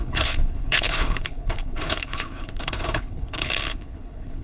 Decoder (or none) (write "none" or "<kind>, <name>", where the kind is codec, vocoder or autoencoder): codec, HILCodec